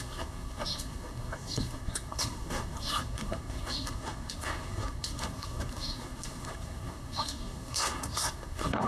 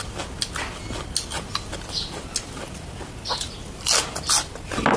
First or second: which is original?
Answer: second